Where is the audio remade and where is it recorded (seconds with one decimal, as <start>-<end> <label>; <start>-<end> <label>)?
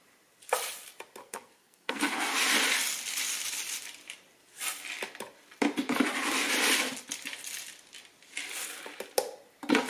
0.0-1.2 recorded; 1.2-2.3 remade; 2.3-9.9 recorded